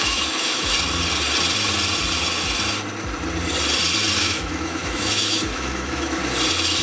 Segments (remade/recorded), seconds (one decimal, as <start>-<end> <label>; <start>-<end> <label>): 0.0-0.7 remade; 0.7-4.2 recorded; 4.2-6.2 remade; 6.2-6.8 recorded